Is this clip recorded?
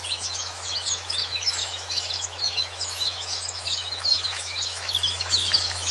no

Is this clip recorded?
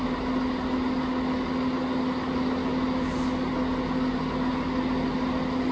yes